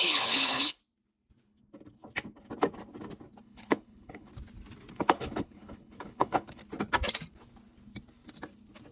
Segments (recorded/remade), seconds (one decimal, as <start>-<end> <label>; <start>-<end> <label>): 0.0-0.8 remade; 0.8-3.4 recorded; 3.4-4.3 remade; 4.3-4.9 recorded; 4.9-6.6 remade; 6.6-8.9 recorded